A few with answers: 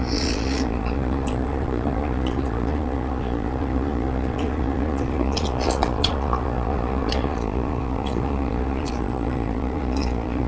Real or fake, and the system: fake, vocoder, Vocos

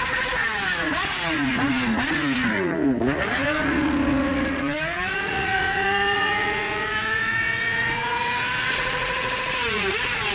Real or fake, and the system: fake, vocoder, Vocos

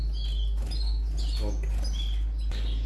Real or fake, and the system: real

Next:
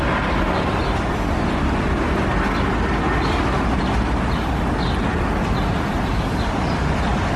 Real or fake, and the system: real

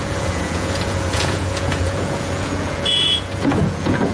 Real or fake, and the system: fake, vocoder, Vocos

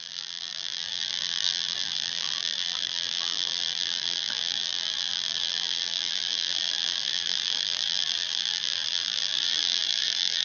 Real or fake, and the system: fake, vocoder, BigVGAN v2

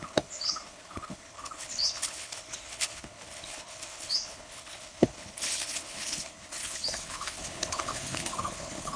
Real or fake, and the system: fake, codec, HILCodec